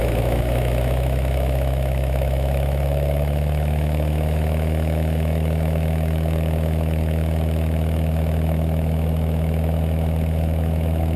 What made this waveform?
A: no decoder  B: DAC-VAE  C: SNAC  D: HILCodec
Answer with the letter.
B